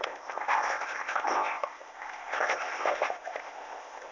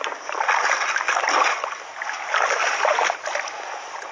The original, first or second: second